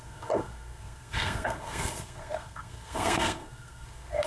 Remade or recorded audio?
remade